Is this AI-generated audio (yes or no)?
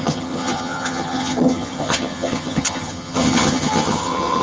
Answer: yes